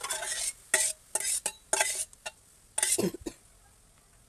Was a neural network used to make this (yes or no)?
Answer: no